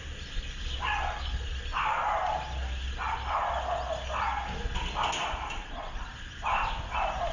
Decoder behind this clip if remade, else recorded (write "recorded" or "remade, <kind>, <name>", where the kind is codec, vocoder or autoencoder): recorded